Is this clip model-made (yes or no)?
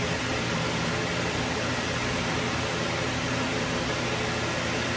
no